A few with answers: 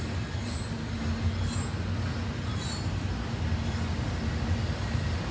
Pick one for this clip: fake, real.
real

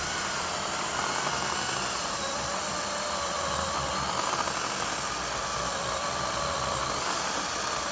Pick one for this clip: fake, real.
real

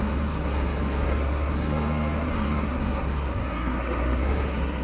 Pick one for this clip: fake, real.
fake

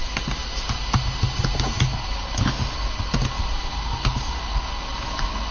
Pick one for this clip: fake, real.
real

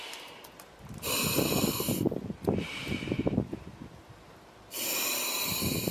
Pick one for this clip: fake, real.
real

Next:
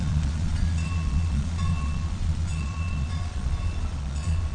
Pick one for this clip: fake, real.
fake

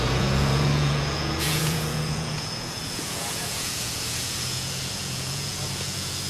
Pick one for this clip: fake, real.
fake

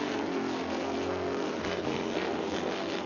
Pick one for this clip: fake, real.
fake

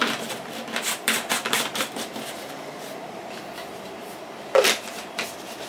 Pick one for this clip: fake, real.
fake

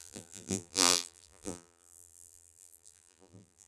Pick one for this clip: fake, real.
fake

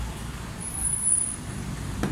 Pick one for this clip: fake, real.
fake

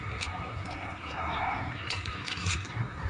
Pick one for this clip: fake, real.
fake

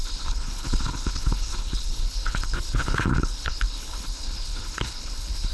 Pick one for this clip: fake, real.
fake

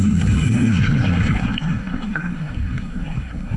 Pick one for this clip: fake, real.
fake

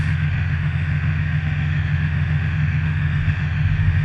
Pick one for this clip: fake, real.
fake